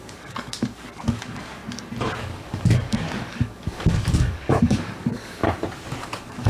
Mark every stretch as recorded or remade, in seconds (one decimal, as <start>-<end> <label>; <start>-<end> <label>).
0.0-1.6 remade; 1.6-2.2 recorded; 2.2-5.4 remade; 5.4-6.0 recorded; 6.0-6.5 remade